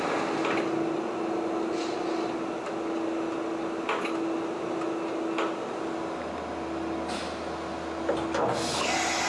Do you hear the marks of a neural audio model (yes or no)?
no